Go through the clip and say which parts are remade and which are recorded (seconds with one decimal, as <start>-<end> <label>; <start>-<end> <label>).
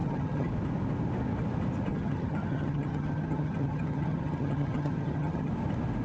0.0-0.5 remade; 0.5-1.9 recorded; 1.9-5.5 remade; 5.5-6.0 recorded